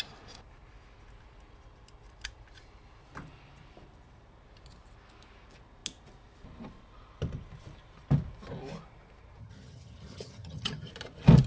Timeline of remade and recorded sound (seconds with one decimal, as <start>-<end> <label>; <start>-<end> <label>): 0.0-9.4 recorded; 9.4-10.9 remade; 10.9-11.5 recorded